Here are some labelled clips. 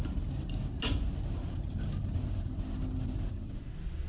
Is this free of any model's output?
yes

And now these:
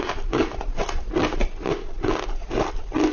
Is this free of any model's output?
yes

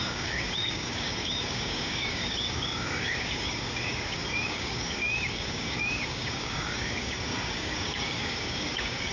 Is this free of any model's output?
no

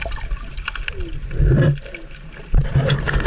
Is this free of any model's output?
yes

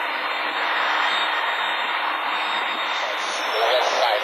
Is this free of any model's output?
yes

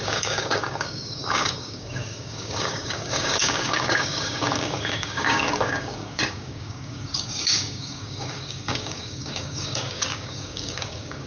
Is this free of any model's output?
no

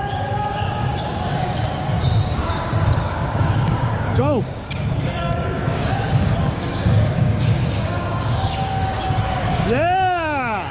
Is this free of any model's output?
no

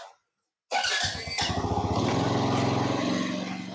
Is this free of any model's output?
yes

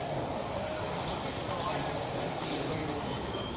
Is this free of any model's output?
yes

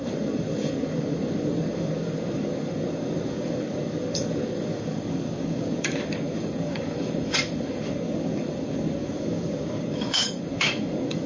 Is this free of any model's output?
no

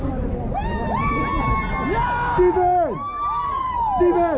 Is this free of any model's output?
yes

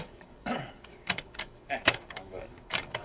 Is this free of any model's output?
no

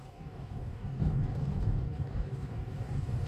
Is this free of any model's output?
no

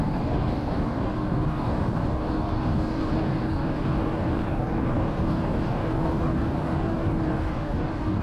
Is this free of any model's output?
no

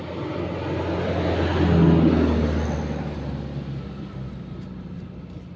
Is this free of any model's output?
yes